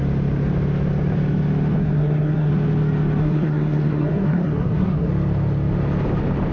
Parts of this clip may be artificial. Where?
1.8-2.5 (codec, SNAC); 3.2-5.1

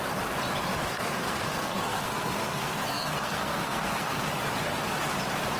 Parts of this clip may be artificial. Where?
0.8-4.2 (codec, SNAC)

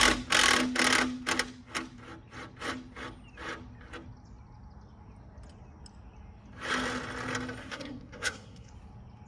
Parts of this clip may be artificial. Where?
7.6-8.7 (codec, SNAC)

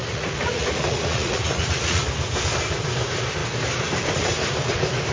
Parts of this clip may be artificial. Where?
0.0-2.0 (vocoder, Vocos)

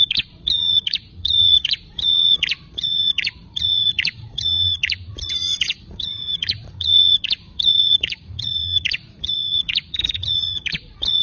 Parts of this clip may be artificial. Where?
0.0-11.2 (vocoder, Vocos)